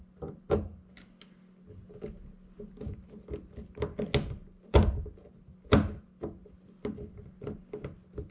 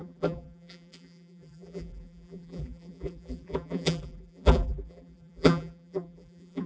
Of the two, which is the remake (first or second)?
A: second